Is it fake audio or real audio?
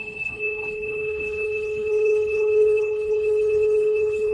fake